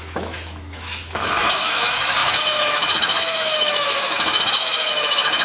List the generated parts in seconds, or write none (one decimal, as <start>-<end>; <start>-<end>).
0.0-5.4